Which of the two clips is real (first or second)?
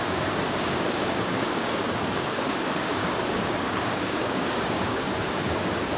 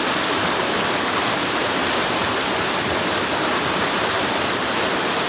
second